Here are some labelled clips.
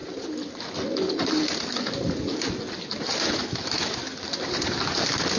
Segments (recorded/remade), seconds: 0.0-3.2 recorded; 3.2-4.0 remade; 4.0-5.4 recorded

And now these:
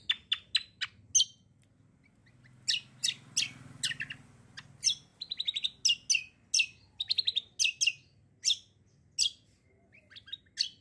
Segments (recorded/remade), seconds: 0.0-10.8 recorded

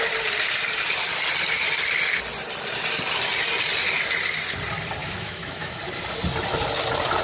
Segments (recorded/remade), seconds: 0.0-5.0 recorded; 5.0-5.7 remade; 5.7-7.2 recorded

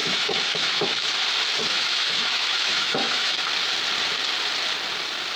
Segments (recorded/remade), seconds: 0.0-1.1 remade; 1.1-1.7 recorded; 1.7-3.4 remade; 3.4-5.4 recorded

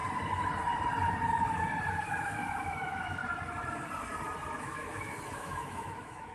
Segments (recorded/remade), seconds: 0.0-1.9 recorded; 1.9-3.2 remade; 3.2-4.6 recorded; 4.6-6.3 remade

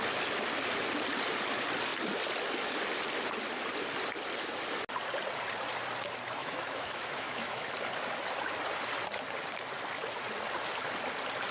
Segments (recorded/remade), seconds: 0.0-6.4 recorded; 6.4-7.7 remade; 7.7-11.5 recorded

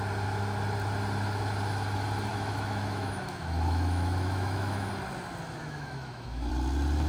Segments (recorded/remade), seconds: 0.0-2.3 recorded; 2.3-4.9 remade; 4.9-5.6 recorded; 5.6-6.5 remade; 6.5-7.1 recorded